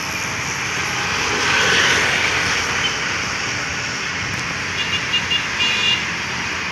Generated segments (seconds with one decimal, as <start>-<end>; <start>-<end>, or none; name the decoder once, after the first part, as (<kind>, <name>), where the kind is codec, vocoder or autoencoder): 0.0-3.7 (vocoder, BigVGAN v2); 6.3-6.7